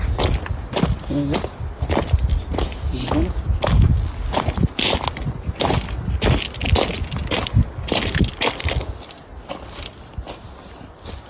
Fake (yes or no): no